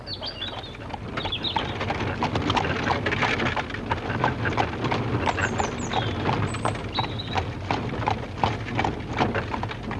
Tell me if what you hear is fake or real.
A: real